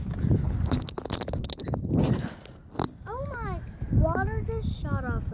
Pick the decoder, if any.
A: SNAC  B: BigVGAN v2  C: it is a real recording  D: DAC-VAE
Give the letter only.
C